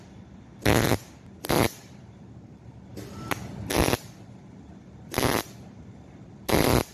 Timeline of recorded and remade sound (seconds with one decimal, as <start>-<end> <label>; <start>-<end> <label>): 0.0-0.5 remade; 0.5-1.5 recorded; 1.5-2.9 remade; 2.9-4.1 recorded; 4.1-6.9 remade